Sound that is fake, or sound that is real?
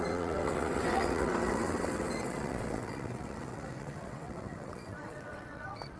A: fake